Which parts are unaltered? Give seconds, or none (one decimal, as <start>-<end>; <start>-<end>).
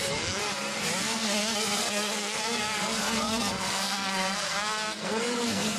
0.4-1.0